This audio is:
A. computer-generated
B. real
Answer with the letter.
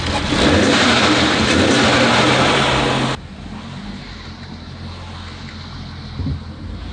B